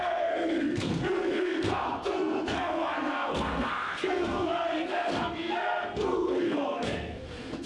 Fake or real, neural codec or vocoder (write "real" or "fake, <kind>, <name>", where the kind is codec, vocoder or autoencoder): fake, codec, SNAC